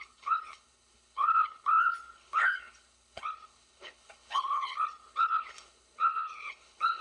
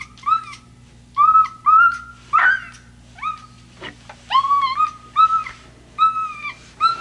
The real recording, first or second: second